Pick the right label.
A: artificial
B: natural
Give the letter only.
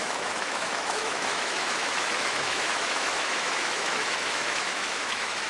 A